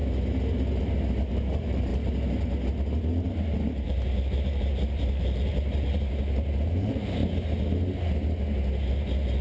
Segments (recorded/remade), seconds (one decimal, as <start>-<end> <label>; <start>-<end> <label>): 0.0-0.8 recorded; 0.8-1.9 remade; 1.9-3.8 recorded; 3.8-7.2 remade; 7.2-8.9 recorded; 8.9-9.4 remade